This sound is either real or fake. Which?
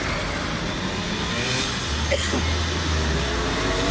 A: real